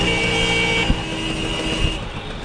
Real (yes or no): yes